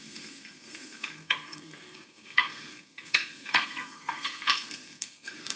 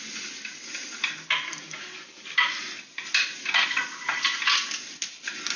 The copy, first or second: first